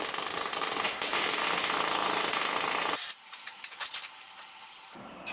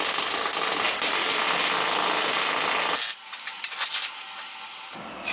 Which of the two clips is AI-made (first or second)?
first